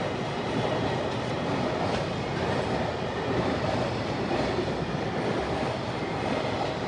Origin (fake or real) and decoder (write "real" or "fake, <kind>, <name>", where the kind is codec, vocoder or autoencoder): real